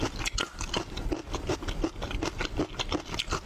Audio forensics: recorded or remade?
recorded